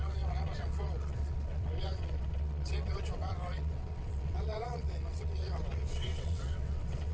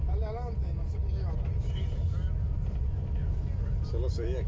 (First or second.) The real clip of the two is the second